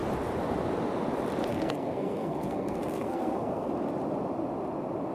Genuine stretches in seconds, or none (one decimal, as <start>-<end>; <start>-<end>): 0.0-1.5; 3.7-5.1